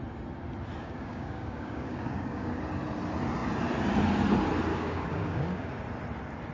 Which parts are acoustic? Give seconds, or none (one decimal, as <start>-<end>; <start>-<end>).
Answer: 0.0-0.8; 2.6-4.7; 5.7-6.5